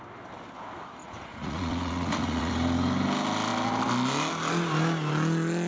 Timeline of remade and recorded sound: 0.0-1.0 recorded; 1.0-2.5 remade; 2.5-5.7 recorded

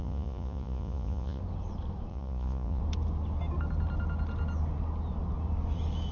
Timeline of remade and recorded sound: 0.0-1.4 remade; 1.4-2.1 recorded; 2.1-2.8 remade; 2.8-6.1 recorded

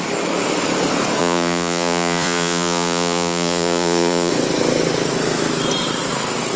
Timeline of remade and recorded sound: 0.0-1.2 recorded; 1.2-4.3 remade; 4.3-6.6 recorded

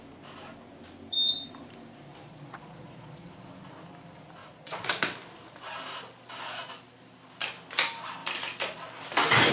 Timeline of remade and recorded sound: 0.0-2.1 recorded; 2.1-3.3 remade; 3.3-4.4 recorded; 4.4-5.2 remade; 5.2-9.5 recorded

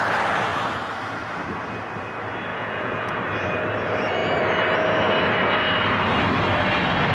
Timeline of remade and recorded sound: 0.0-2.5 recorded; 2.5-3.2 remade; 3.2-7.1 recorded

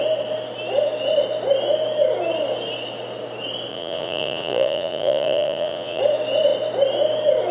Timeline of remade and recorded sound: 0.0-3.7 recorded; 3.7-6.0 remade; 6.0-7.5 recorded